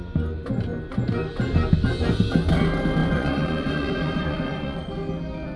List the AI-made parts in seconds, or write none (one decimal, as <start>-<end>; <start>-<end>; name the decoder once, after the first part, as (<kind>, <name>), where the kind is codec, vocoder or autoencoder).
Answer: 3.0-4.9 (vocoder, Vocos)